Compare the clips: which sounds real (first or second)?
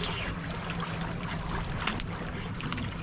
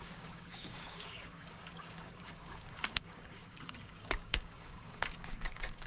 first